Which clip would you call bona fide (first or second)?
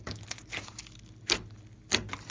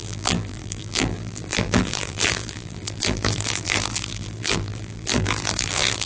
first